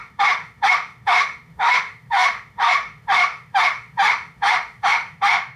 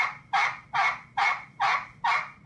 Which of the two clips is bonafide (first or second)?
second